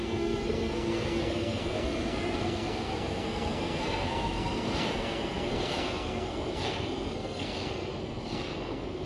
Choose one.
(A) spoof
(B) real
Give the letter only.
A